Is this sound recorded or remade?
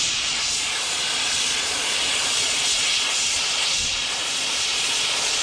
remade